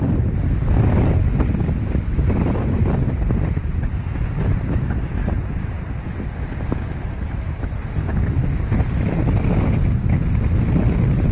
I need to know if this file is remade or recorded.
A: recorded